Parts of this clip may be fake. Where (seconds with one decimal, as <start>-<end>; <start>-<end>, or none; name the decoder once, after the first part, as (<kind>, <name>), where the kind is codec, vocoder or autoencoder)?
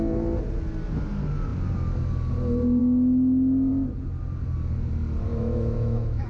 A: 5.3-6.3 (autoencoder, DAC-VAE)